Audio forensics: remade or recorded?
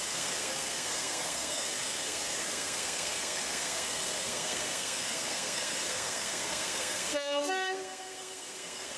remade